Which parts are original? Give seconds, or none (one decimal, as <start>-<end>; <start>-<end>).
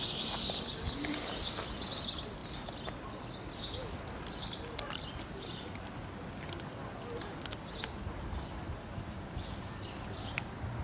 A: 0.0-10.8